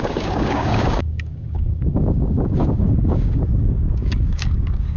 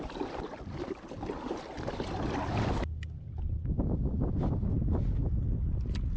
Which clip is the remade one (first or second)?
first